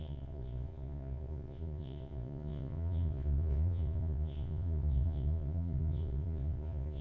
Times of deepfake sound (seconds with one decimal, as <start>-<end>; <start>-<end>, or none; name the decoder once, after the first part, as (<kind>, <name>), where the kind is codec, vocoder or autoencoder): 0.0-7.0 (vocoder, Vocos)